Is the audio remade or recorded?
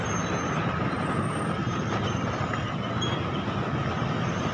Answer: recorded